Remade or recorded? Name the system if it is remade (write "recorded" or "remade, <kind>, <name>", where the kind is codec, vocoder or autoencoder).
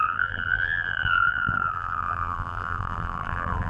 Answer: remade, vocoder, BigVGAN v2